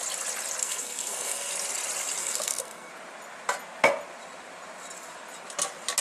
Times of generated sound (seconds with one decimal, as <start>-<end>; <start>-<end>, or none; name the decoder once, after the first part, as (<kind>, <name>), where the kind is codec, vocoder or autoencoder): 0.6-1.5 (codec, SNAC); 2.2-2.9